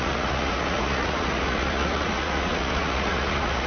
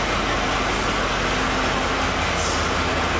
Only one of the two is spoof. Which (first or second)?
first